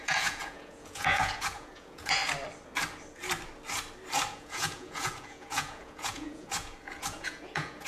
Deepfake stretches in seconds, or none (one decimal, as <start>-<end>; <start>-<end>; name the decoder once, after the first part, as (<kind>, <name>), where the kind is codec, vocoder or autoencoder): 0.0-2.2 (vocoder, Vocos); 4.3-7.9